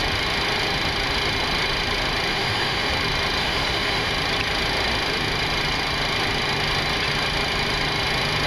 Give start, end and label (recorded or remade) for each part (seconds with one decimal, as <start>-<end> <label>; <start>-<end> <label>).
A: 0.0-2.3 recorded; 2.3-2.9 remade; 2.9-3.4 recorded; 3.4-4.1 remade; 4.1-8.5 recorded